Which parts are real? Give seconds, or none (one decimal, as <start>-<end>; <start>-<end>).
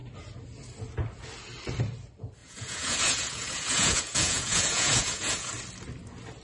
0.0-2.4; 5.5-6.4